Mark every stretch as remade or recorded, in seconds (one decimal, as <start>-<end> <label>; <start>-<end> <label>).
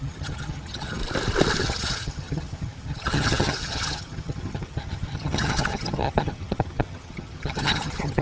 0.0-1.0 remade; 1.0-1.6 recorded; 1.6-8.2 remade